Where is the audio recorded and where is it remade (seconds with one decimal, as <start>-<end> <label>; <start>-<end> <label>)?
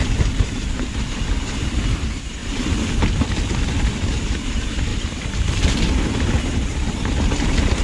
0.0-2.4 remade; 2.4-3.9 recorded; 3.9-7.8 remade